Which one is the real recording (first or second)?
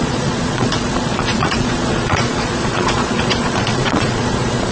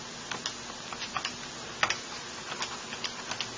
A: second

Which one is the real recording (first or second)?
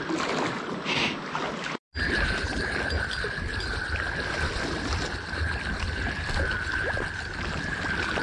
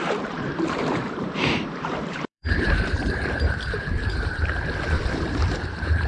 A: first